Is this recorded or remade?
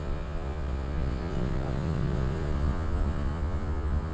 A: remade